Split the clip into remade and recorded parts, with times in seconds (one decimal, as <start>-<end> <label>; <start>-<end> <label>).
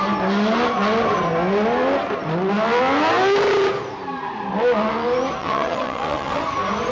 0.0-5.4 recorded; 5.4-6.4 remade; 6.4-6.9 recorded